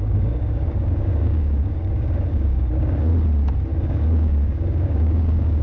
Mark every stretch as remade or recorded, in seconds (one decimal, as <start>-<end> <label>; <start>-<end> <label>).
0.0-3.1 remade; 3.1-3.8 recorded; 3.8-5.6 remade